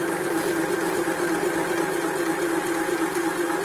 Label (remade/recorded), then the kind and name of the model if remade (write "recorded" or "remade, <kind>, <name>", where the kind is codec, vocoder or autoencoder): recorded